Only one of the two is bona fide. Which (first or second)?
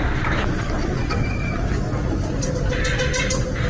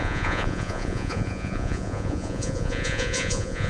first